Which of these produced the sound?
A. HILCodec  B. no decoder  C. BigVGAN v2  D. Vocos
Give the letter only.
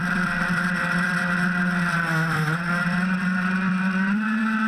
C